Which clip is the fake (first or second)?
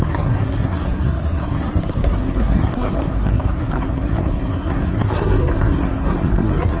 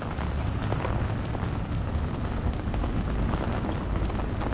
first